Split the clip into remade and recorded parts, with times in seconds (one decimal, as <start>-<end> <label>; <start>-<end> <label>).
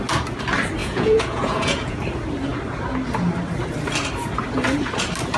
0.0-0.8 recorded; 0.8-2.0 remade; 2.0-5.4 recorded